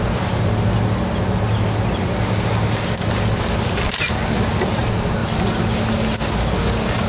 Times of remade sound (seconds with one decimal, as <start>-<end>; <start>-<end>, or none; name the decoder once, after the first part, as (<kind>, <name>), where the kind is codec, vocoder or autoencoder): none